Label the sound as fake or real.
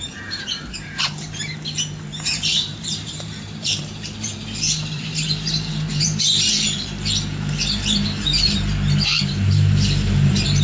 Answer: fake